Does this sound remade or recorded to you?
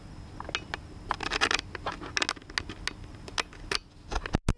recorded